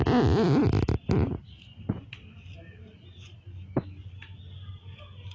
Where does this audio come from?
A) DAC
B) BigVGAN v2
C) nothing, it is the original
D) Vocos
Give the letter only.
C